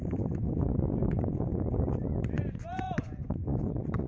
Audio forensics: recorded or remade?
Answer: remade